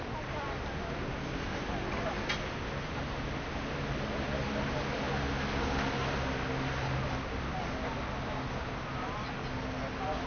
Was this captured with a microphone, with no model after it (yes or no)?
yes